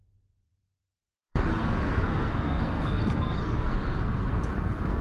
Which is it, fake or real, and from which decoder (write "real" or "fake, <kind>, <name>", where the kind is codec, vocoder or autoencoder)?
fake, codec, SNAC